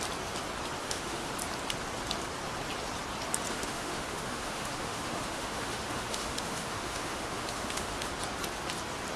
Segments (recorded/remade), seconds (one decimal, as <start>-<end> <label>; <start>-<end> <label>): 0.0-0.8 recorded; 0.8-1.3 remade; 1.3-3.5 recorded; 3.5-8.1 remade; 8.1-9.2 recorded